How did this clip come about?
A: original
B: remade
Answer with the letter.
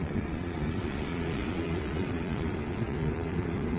B